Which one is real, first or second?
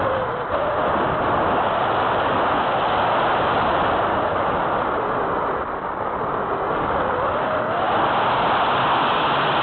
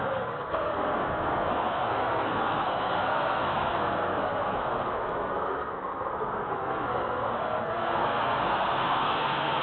first